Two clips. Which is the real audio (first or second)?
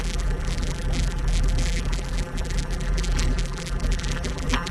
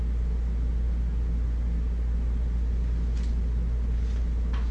second